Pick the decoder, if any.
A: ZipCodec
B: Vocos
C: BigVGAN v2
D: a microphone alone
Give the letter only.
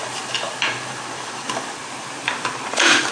D